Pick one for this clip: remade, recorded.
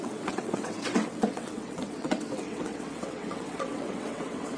remade